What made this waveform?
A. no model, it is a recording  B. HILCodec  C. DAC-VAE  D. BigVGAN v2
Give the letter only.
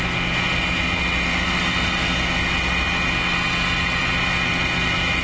A